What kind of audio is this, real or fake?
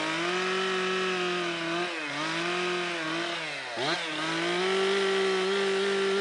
real